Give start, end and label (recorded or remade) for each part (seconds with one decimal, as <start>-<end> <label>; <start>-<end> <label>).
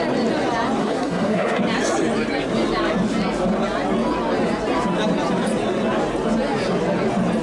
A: 0.0-0.8 recorded; 0.8-1.6 remade; 1.6-7.4 recorded